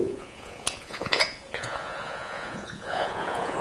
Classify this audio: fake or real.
fake